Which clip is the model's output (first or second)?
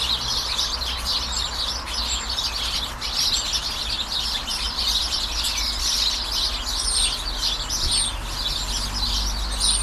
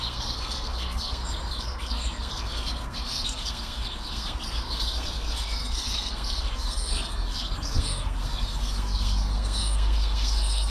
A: second